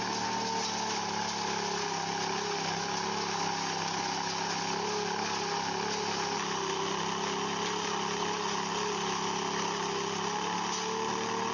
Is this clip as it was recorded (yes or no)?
yes